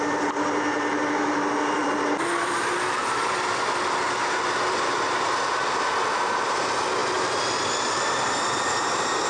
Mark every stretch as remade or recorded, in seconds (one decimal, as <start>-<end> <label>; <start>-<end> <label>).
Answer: 0.0-1.8 recorded; 1.8-5.3 remade; 5.3-7.0 recorded; 7.0-8.9 remade; 8.9-9.3 recorded